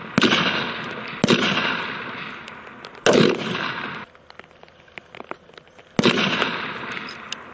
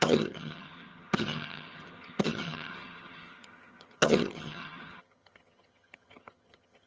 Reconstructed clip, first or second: second